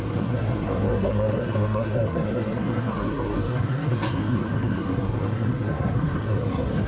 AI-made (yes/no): yes